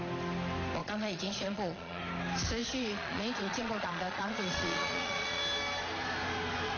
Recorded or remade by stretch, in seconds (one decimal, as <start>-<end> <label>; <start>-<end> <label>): 0.0-0.8 recorded; 0.8-2.0 remade; 2.0-2.6 recorded; 2.6-5.4 remade; 5.4-6.8 recorded

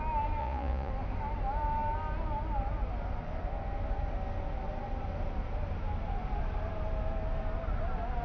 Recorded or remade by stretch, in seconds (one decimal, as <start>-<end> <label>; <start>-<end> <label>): 0.0-0.4 recorded; 0.4-0.9 remade; 0.9-8.2 recorded

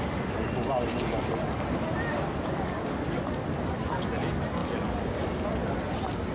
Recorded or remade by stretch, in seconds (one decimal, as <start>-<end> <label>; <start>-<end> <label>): 0.0-6.3 recorded

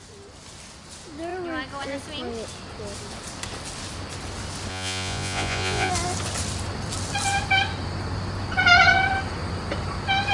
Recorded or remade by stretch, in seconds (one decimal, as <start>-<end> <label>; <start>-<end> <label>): 0.0-4.7 recorded; 4.7-5.9 remade; 5.9-10.3 recorded

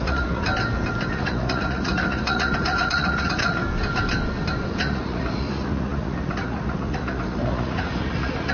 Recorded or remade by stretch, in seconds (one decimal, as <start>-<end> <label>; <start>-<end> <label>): 0.0-0.5 remade; 0.5-1.1 recorded; 1.1-3.6 remade; 3.6-4.8 recorded; 4.8-8.5 remade